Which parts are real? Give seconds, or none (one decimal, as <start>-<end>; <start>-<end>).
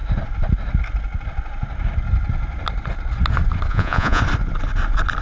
0.0-3.7; 4.2-5.2